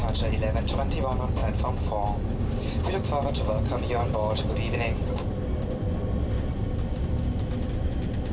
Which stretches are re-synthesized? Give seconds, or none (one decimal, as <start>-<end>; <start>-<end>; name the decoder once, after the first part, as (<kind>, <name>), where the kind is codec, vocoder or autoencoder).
none